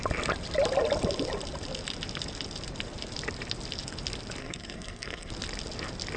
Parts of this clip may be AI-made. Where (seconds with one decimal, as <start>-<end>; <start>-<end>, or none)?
4.4-5.3